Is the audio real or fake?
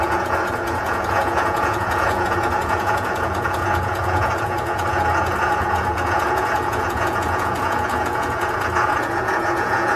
fake